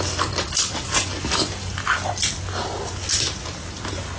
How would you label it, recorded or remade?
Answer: recorded